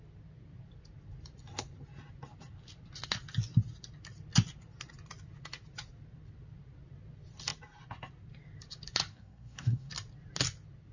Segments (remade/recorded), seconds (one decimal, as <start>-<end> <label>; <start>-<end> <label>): 0.0-9.1 recorded; 9.1-9.9 remade; 9.9-10.9 recorded